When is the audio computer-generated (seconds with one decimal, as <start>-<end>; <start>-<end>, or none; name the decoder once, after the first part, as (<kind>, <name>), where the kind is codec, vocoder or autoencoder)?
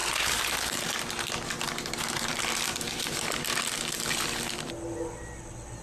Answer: 0.0-1.0 (vocoder, BigVGAN v2)